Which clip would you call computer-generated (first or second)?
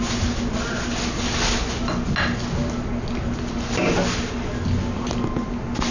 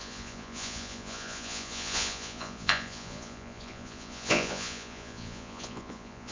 second